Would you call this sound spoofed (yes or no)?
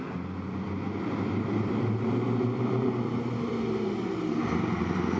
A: no